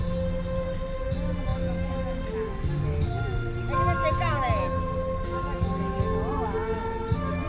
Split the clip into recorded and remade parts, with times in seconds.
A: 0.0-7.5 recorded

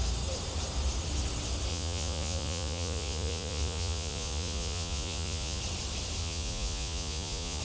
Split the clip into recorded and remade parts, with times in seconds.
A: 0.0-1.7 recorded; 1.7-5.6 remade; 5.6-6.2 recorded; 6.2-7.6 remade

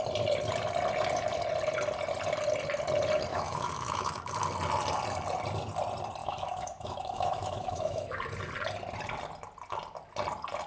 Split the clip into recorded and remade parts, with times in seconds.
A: 0.0-3.3 recorded; 3.3-4.3 remade; 4.3-6.2 recorded; 6.2-8.2 remade; 8.2-10.7 recorded